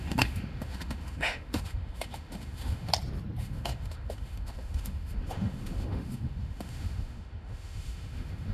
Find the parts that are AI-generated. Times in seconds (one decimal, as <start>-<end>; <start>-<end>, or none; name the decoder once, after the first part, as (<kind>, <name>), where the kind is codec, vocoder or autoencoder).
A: 0.0-2.9 (autoencoder, DAC-VAE); 3.4-8.5